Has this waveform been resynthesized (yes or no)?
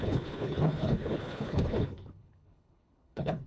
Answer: yes